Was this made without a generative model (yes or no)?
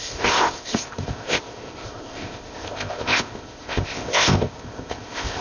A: no